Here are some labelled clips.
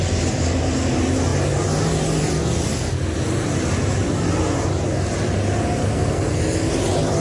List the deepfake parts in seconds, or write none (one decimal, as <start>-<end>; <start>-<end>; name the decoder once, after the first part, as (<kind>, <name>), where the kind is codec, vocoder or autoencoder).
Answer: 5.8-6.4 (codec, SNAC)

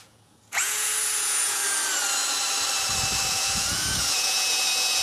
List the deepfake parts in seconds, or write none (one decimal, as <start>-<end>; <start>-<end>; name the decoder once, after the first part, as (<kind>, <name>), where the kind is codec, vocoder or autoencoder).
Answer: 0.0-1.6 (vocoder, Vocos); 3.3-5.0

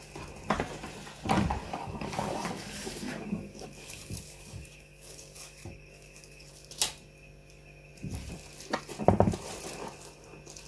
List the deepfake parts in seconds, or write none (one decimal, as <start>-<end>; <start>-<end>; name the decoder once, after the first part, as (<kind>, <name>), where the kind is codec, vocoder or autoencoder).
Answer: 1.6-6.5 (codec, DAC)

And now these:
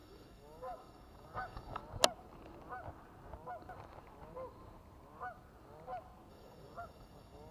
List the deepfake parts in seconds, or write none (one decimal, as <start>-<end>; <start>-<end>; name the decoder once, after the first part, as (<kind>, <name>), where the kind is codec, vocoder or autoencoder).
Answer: 0.0-1.8 (codec, DAC); 6.3-7.5